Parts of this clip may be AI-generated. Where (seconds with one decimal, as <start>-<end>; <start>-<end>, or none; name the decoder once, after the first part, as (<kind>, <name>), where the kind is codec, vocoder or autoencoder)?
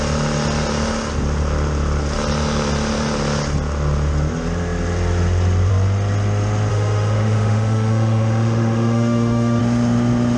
6.7-9.6 (autoencoder, DAC-VAE)